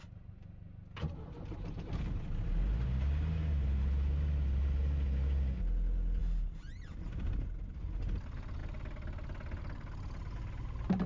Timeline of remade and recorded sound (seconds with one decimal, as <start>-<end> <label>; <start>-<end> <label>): 0.0-11.1 recorded